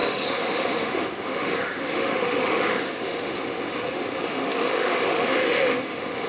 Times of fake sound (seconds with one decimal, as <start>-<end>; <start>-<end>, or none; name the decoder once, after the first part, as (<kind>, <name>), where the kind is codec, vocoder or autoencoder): 0.0-6.3 (autoencoder, DAC-VAE)